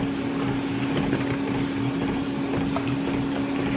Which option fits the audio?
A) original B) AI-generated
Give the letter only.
A